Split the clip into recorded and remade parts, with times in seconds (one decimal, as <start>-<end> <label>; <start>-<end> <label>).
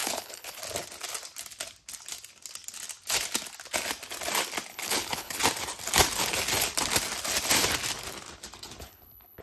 0.0-0.6 remade; 0.6-4.7 recorded; 4.7-5.4 remade; 5.4-8.8 recorded; 8.8-9.4 remade